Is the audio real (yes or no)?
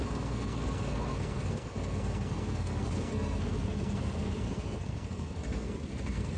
no